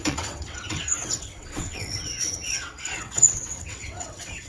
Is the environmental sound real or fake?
fake